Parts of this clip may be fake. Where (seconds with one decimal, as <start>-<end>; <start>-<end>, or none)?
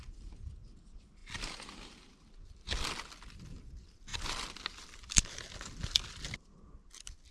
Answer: none